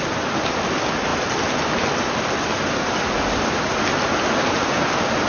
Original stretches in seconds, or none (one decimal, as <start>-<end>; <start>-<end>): 0.0-5.3